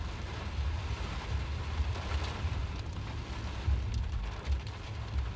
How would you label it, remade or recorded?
recorded